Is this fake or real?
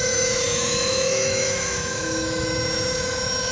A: fake